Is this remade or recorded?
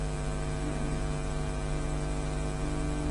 recorded